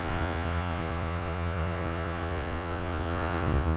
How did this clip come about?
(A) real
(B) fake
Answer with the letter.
B